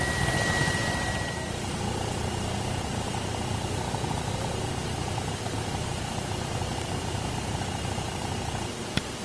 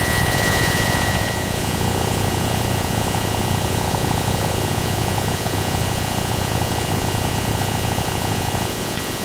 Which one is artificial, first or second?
second